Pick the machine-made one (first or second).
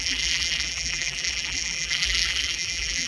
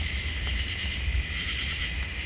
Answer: first